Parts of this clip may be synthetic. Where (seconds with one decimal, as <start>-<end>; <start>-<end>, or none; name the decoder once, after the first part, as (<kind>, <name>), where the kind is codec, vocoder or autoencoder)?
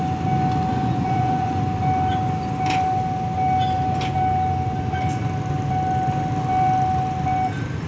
0.7-1.6 (vocoder, Vocos)